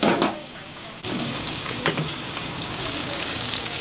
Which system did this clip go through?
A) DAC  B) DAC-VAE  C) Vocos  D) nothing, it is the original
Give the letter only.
A